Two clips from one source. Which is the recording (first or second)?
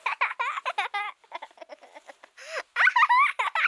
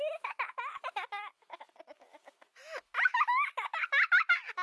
first